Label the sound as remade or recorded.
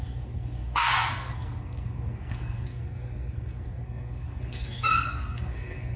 remade